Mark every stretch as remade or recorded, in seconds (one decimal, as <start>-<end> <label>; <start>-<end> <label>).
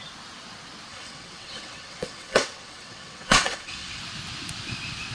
0.0-0.9 recorded; 0.9-4.0 remade; 4.0-5.1 recorded